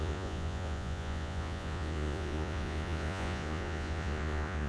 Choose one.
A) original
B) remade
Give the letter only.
B